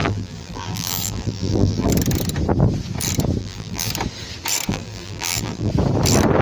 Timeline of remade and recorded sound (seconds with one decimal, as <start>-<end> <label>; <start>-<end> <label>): 0.0-1.9 remade; 1.9-3.4 recorded; 3.4-3.9 remade; 3.9-4.7 recorded; 4.7-5.7 remade; 5.7-6.4 recorded